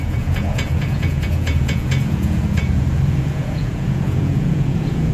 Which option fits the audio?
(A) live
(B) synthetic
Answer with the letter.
B